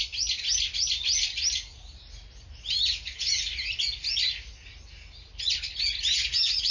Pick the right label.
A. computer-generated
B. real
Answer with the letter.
B